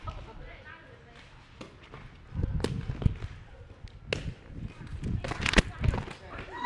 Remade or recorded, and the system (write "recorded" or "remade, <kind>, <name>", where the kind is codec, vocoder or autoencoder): recorded